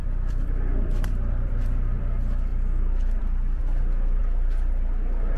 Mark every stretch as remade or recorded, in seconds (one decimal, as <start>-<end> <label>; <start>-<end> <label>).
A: 0.0-2.5 remade; 2.5-3.2 recorded; 3.2-4.2 remade; 4.2-5.4 recorded